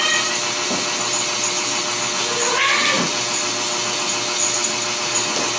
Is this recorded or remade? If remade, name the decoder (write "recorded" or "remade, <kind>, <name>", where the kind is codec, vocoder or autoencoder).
recorded